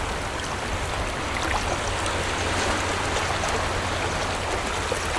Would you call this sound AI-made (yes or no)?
no